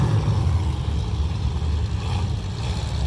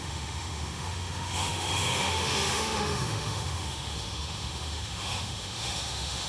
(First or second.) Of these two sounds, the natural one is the first